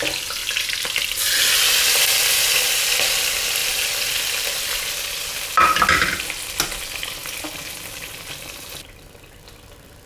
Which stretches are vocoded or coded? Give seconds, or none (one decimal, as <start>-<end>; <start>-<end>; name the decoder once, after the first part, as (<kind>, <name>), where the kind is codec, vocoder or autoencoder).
none